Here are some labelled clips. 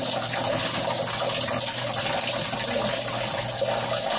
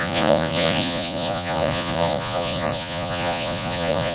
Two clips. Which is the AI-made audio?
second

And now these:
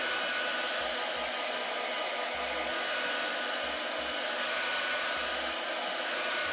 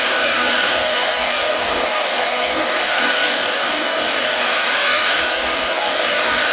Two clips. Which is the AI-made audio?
second